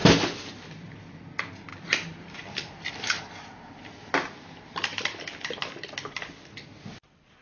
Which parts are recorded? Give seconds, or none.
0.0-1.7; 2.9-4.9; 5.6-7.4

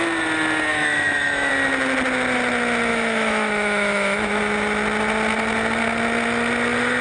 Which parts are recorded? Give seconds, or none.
0.0-0.7; 1.5-2.9; 4.4-7.0

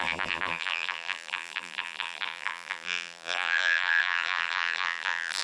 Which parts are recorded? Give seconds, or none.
none

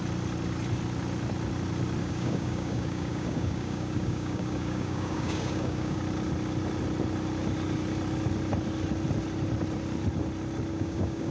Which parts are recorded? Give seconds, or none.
0.0-2.0; 6.0-10.7

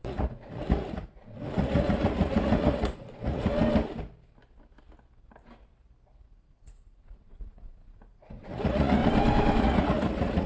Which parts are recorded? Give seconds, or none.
3.5-6.3; 9.0-9.6

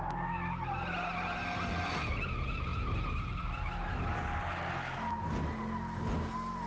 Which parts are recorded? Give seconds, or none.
0.0-6.7